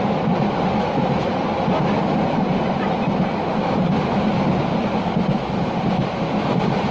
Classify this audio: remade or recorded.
recorded